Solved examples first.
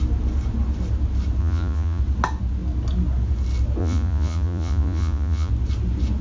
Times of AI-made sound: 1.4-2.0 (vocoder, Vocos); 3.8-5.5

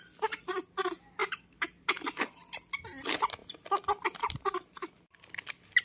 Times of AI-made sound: none

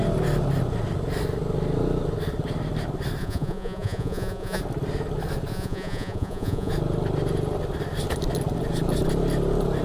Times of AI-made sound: 3.2-4.6 (vocoder, Vocos); 5.5-6.7

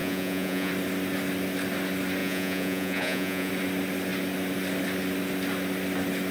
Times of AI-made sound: 0.0-0.7 (vocoder, Vocos); 2.2-3.5

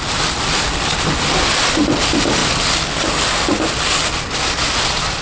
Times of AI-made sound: none